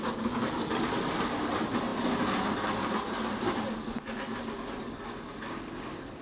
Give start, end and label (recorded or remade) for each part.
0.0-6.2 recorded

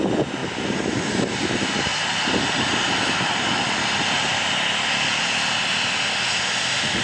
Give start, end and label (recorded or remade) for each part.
0.0-0.4 recorded; 0.4-1.1 remade; 1.1-7.0 recorded

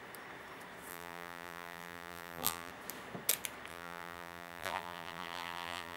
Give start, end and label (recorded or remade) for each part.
0.0-0.9 recorded; 0.9-2.7 remade; 2.7-3.7 recorded; 3.7-6.0 remade

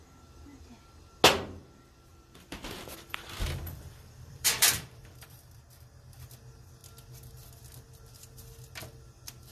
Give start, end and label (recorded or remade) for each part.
0.0-2.1 recorded; 2.1-5.6 remade; 5.6-9.5 recorded